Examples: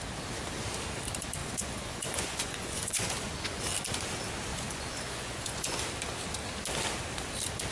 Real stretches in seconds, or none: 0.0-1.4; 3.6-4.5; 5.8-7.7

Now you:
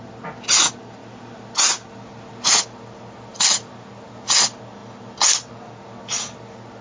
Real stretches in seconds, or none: 0.0-6.8

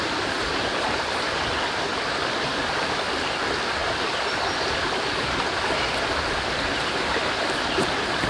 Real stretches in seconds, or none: 0.0-1.9; 3.4-8.3

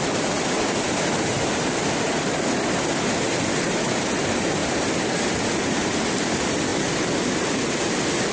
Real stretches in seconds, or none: 0.0-4.6; 6.0-8.3

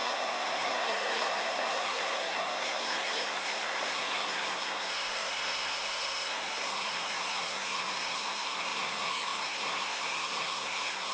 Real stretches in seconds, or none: none

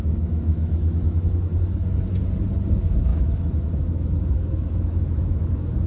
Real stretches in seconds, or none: 1.5-2.7

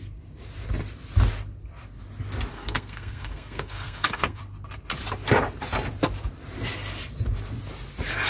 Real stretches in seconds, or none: 0.0-2.5; 4.4-8.3